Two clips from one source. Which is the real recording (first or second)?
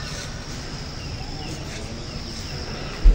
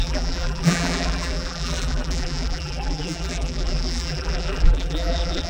first